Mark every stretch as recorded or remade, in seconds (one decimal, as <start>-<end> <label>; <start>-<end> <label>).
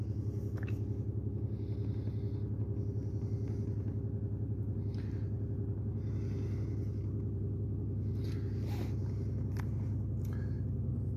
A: 0.0-11.2 recorded